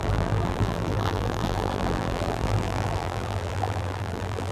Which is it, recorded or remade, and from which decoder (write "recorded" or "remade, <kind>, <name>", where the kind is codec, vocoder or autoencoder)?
remade, vocoder, BigVGAN v2